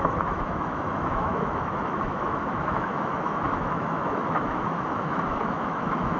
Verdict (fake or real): fake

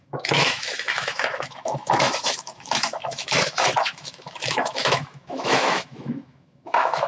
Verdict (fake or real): fake